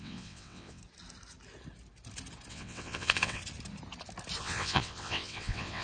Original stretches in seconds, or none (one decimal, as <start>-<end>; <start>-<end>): 0.8-2.5; 3.4-4.4